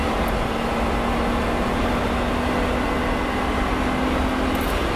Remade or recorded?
recorded